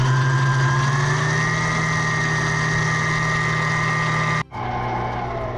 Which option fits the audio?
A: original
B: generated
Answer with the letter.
A